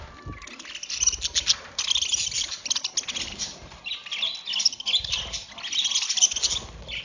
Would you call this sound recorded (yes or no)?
yes